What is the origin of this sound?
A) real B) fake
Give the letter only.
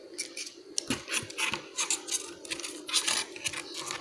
A